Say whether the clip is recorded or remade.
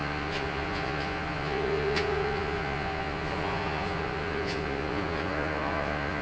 remade